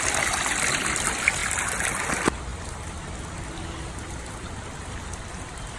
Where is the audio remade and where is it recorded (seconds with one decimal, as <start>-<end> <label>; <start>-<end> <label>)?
0.0-5.8 recorded